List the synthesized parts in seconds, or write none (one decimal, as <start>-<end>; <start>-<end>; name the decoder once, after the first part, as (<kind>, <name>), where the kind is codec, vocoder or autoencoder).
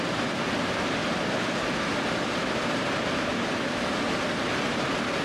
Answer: 0.0-1.0 (vocoder, BigVGAN v2); 2.5-3.3; 4.1-5.2